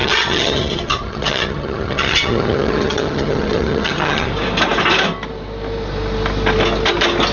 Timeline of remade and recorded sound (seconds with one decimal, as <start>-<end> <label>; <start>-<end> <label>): 0.0-4.3 remade; 4.3-7.3 recorded